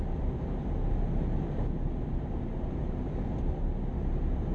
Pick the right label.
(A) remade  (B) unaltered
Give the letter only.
B